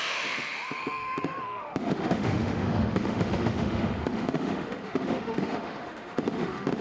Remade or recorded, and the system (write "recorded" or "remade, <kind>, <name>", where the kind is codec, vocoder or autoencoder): remade, autoencoder, DAC-VAE